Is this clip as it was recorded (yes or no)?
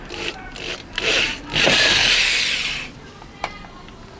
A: no